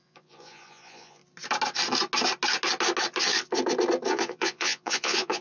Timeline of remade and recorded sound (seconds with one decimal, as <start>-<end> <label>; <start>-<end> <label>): 0.0-1.2 remade; 1.2-4.1 recorded; 4.1-5.4 remade